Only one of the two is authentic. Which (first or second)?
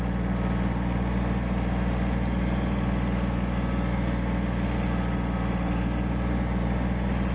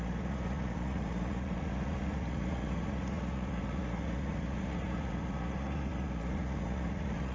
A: first